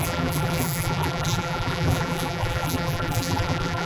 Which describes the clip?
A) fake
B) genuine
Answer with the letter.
A